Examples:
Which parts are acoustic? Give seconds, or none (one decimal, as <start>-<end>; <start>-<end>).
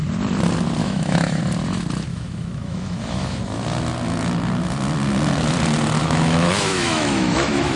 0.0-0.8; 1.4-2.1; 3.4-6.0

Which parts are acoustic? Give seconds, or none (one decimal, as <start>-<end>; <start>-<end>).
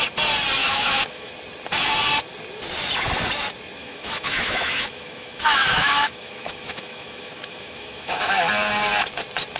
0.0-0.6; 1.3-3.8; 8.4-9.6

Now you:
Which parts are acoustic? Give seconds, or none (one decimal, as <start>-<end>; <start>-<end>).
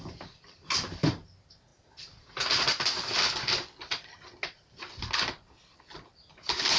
0.0-6.8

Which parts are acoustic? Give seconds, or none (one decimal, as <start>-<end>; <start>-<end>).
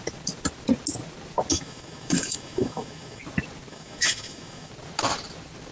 0.0-1.5; 3.2-3.7; 4.7-5.7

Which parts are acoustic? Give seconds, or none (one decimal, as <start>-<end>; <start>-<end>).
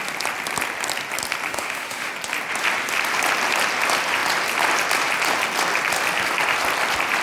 0.0-1.5; 2.1-7.2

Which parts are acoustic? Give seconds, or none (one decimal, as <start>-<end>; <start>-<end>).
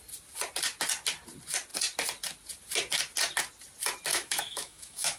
0.0-4.1